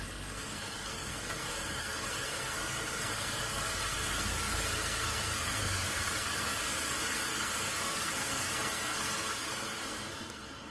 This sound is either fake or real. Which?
fake